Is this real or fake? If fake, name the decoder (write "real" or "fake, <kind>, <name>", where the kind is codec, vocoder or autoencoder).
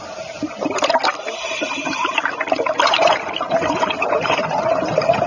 real